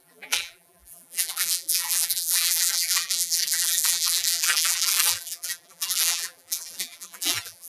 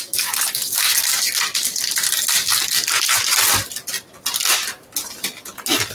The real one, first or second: second